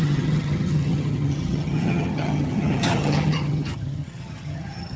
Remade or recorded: remade